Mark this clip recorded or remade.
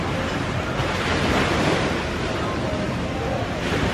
recorded